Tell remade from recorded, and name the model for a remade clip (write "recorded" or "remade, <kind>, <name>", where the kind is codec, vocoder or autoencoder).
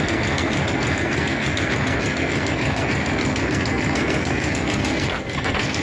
remade, codec, SNAC